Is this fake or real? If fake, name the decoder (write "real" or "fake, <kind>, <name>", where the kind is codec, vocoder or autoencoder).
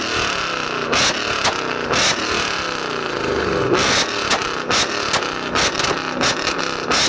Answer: real